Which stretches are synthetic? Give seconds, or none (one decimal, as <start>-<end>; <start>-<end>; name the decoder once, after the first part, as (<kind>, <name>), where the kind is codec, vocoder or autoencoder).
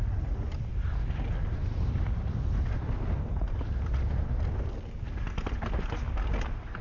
none